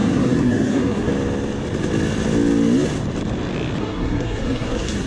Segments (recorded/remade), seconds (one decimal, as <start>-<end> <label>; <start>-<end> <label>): 0.0-1.1 remade; 1.1-3.8 recorded; 3.8-5.1 remade